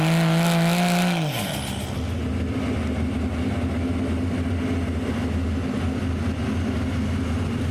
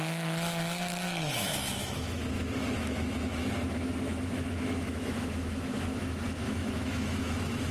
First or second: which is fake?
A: second